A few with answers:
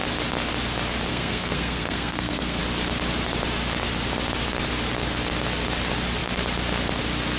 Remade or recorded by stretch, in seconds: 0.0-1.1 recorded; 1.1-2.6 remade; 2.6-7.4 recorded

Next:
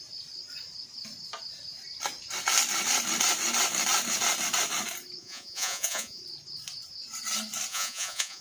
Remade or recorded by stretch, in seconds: 0.0-5.2 recorded; 5.2-6.2 remade; 6.2-7.7 recorded; 7.7-8.4 remade

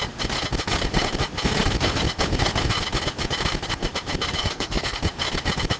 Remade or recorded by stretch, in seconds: 0.0-4.4 recorded; 4.4-5.0 remade; 5.0-5.8 recorded

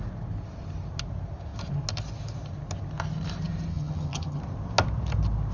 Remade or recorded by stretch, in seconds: 0.0-3.7 recorded; 3.7-4.4 remade; 4.4-5.5 recorded

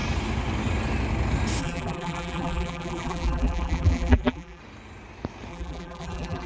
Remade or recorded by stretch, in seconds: 0.0-1.6 recorded; 1.6-4.6 remade; 4.6-5.5 recorded; 5.5-6.5 remade